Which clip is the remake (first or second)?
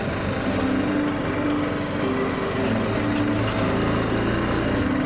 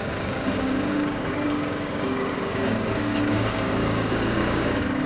second